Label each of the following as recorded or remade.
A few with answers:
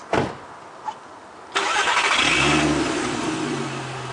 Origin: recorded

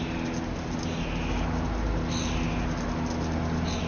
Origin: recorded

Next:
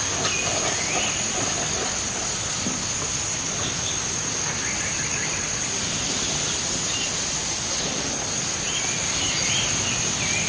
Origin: recorded